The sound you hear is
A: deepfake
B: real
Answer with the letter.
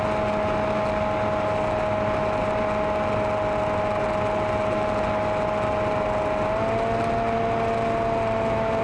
B